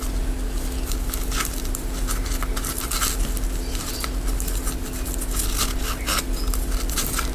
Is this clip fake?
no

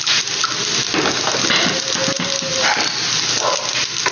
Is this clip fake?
no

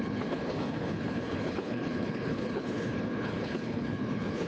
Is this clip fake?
yes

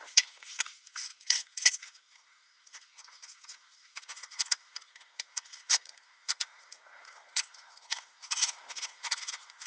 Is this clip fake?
yes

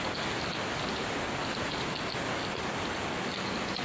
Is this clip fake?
no